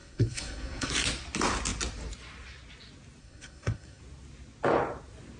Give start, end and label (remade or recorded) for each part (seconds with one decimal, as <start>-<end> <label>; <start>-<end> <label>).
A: 0.0-0.9 remade; 0.9-3.2 recorded; 3.2-4.0 remade; 4.0-5.4 recorded